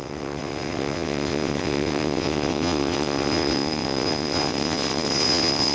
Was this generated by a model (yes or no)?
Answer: yes